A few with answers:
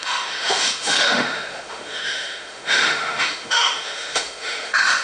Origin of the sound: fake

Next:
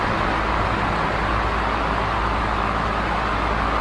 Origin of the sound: real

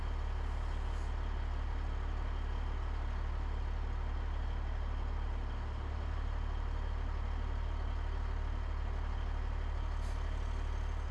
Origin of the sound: real